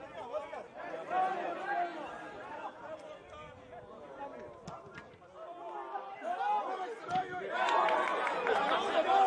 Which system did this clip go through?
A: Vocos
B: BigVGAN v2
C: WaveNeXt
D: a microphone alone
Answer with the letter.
D